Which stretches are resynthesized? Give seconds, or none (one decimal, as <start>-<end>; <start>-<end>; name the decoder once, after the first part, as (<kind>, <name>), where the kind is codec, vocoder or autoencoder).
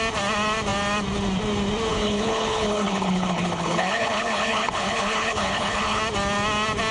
1.9-6.0 (codec, HILCodec)